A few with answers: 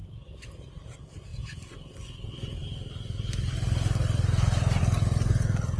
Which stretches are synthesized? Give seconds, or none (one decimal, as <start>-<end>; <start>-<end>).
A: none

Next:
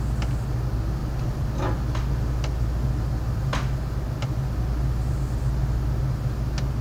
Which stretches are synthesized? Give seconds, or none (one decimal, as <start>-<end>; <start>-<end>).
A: none

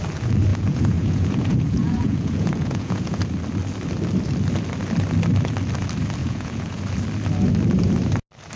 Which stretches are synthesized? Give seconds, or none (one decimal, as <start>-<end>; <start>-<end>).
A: 0.5-3.2; 6.2-6.8

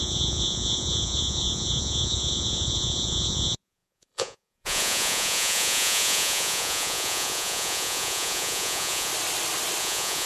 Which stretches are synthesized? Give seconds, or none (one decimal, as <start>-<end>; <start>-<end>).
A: 0.0-9.1; 9.8-10.3

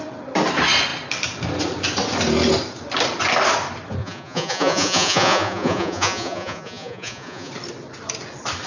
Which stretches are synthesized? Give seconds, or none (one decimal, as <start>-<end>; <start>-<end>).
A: 4.0-7.5

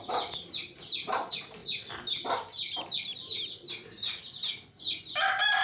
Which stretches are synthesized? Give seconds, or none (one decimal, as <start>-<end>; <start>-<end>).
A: none

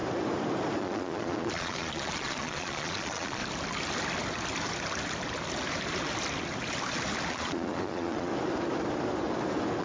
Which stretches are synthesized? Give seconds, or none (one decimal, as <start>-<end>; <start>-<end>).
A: 0.8-3.4; 7.3-8.3